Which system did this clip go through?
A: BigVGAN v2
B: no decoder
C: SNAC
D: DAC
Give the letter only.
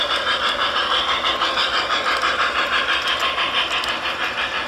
B